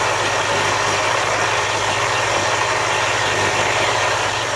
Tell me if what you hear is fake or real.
real